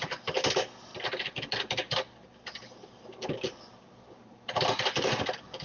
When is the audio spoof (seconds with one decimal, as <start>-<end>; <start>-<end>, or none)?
none